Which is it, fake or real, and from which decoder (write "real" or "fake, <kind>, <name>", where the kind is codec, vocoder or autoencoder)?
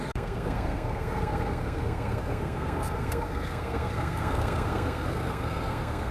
fake, codec, SNAC